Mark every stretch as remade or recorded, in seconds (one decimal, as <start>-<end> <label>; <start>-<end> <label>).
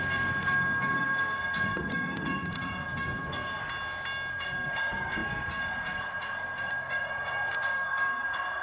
0.0-3.6 remade; 3.6-4.3 recorded; 4.3-8.6 remade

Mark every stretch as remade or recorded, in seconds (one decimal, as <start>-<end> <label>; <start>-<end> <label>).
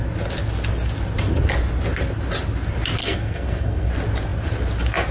0.0-3.0 recorded; 3.0-3.9 remade; 3.9-5.1 recorded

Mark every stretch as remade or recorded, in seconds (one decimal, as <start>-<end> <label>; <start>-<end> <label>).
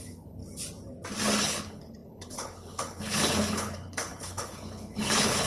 0.0-0.4 remade; 0.4-1.4 recorded; 1.4-5.5 remade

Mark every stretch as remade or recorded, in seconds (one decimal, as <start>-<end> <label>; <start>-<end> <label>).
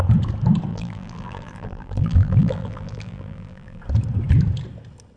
0.0-0.7 recorded; 0.7-3.8 remade; 3.8-5.2 recorded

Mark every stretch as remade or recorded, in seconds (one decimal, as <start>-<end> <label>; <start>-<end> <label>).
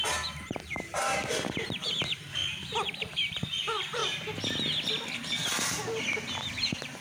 0.0-2.4 remade; 2.4-3.3 recorded; 3.3-4.0 remade; 4.0-6.5 recorded; 6.5-7.0 remade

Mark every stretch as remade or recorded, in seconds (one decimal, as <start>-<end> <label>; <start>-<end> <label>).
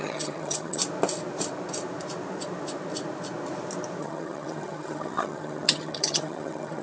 0.0-0.8 remade; 0.8-4.0 recorded; 4.0-6.8 remade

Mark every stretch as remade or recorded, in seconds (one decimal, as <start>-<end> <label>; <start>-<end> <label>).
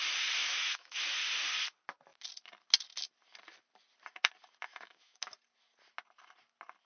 0.0-0.4 recorded; 0.4-1.0 remade; 1.0-4.7 recorded; 4.7-5.3 remade; 5.3-6.9 recorded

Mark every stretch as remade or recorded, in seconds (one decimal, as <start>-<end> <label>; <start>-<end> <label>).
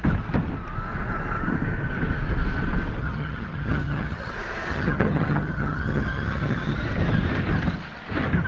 0.0-3.0 recorded; 3.0-4.3 remade; 4.3-4.7 recorded; 4.7-6.8 remade; 6.8-8.5 recorded